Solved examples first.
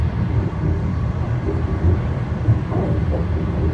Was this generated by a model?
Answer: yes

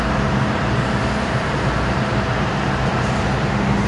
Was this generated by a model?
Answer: yes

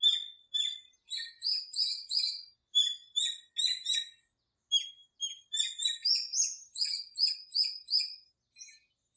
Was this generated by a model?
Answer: no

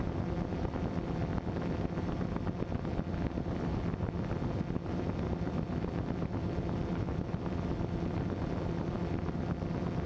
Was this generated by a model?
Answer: no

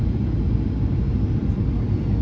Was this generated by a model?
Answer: no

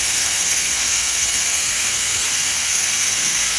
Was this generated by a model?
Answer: yes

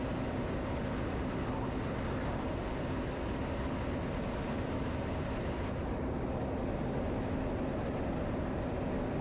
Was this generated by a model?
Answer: no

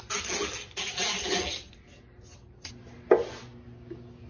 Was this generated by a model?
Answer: no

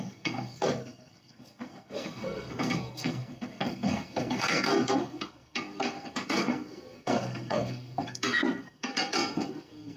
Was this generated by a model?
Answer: yes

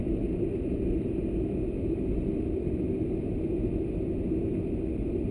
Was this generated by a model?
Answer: no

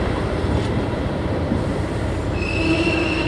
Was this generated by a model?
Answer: yes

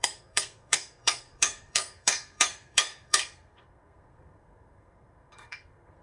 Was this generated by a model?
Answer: yes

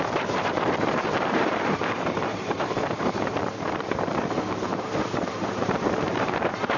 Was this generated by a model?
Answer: yes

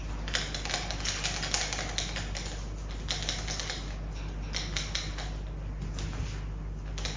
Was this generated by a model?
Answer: no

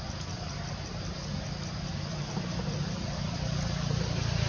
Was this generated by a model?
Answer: no